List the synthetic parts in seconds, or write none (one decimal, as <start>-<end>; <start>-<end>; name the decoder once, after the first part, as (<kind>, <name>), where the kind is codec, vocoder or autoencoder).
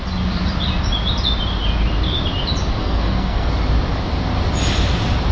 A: 2.8-3.5 (codec, SNAC)